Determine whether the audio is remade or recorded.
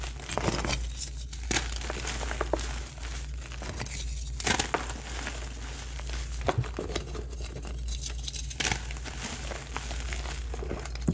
recorded